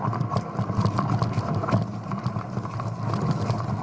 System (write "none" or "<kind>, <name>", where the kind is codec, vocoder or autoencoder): none